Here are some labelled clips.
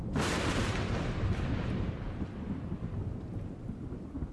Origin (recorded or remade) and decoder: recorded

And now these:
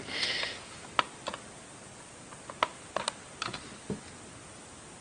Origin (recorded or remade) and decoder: recorded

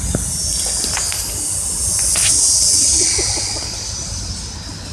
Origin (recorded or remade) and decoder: recorded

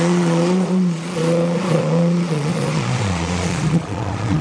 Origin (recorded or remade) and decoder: remade, vocoder, Vocos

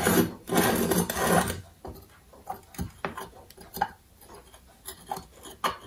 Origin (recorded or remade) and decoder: recorded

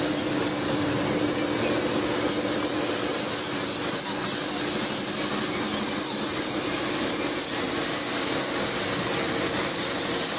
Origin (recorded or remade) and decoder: recorded